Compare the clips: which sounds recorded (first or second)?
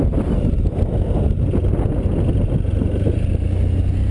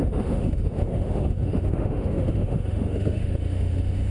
first